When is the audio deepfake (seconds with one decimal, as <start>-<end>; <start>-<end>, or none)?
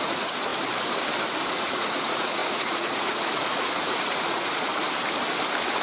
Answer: 0.0-0.5; 1.5-4.7